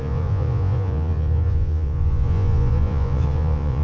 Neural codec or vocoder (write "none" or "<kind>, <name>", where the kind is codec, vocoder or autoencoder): vocoder, Vocos